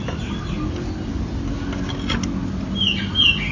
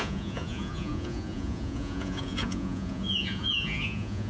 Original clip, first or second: first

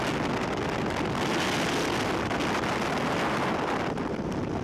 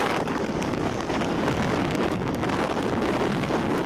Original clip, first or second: first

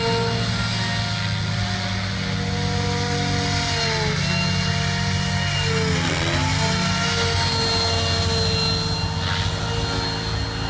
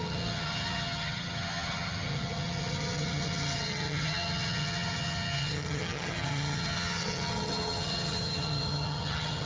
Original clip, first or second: first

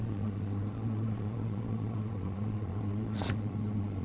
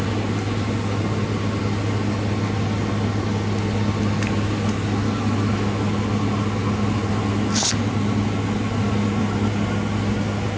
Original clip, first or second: second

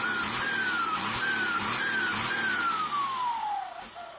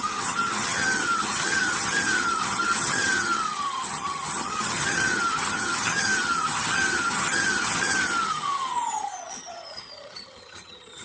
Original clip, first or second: first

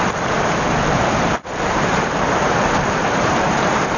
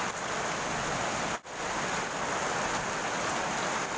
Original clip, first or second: second